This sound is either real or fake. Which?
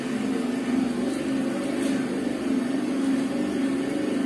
real